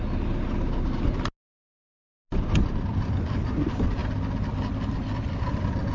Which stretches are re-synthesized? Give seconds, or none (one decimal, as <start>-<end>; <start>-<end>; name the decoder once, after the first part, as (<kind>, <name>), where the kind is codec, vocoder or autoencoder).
none